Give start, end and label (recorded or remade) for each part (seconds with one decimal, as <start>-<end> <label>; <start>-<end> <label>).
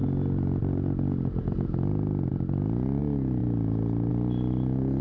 0.0-5.0 recorded